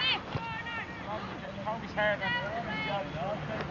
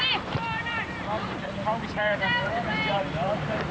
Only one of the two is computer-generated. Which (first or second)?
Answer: second